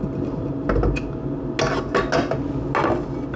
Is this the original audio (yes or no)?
yes